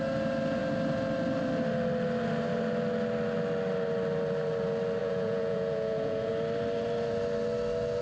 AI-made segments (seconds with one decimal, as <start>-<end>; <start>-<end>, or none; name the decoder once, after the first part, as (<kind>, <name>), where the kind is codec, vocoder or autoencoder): 5.0-6.3 (vocoder, Vocos)